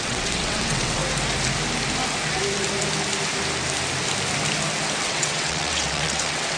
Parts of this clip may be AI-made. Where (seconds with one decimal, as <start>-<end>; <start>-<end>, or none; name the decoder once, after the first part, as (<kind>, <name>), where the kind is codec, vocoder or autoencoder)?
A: 0.0-1.0 (vocoder, WaveNeXt); 5.0-6.6